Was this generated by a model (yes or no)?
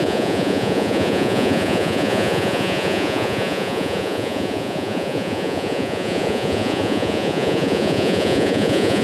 yes